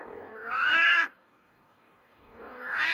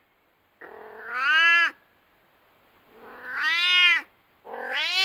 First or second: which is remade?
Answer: first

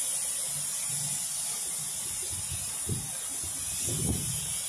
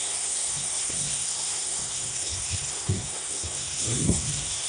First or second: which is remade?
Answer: second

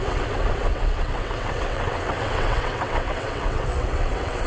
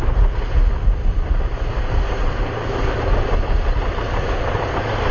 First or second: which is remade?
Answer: first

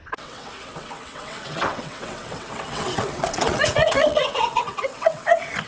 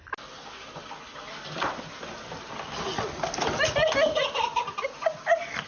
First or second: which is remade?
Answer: first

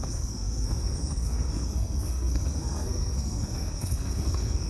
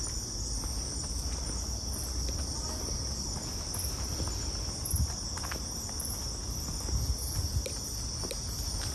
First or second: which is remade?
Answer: first